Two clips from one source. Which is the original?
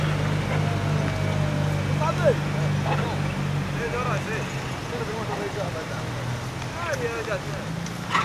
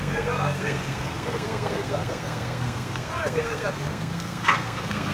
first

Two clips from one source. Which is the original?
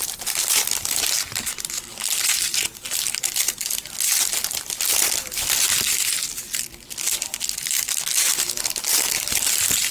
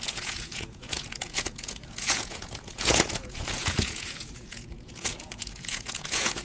first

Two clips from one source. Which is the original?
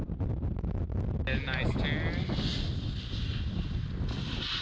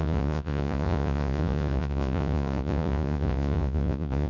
first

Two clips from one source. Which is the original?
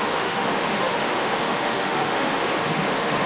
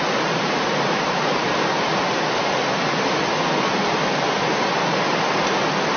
second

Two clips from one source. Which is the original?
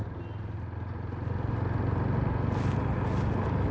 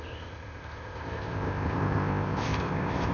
first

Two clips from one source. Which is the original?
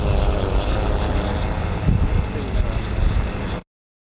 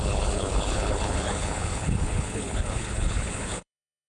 first